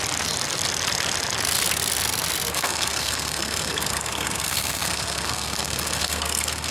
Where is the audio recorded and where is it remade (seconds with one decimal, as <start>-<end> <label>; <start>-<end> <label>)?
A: 0.0-2.5 recorded; 2.5-6.7 remade